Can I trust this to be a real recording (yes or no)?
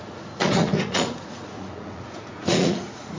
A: no